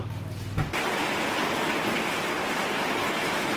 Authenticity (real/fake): real